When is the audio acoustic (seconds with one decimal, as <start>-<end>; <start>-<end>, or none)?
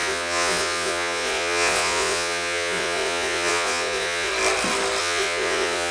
4.3-5.0